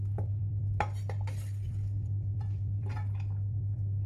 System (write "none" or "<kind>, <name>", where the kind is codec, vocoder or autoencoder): vocoder, BigVGAN v2